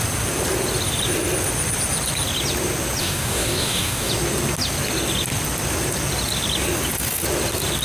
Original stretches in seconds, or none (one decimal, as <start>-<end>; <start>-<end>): 0.0-3.0; 4.1-7.8